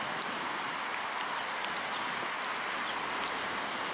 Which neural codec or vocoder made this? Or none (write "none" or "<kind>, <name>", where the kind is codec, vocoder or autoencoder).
none